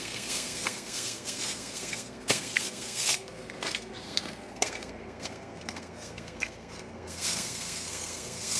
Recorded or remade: remade